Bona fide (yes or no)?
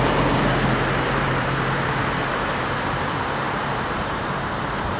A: no